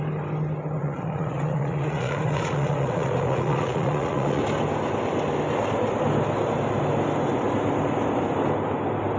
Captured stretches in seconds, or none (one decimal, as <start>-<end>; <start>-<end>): 0.0-0.8; 4.4-9.2